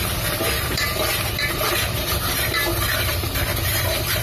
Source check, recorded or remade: remade